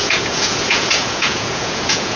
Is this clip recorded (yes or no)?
no